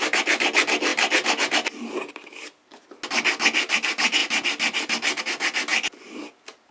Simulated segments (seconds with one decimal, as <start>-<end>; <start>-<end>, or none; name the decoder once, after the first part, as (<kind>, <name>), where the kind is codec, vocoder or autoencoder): none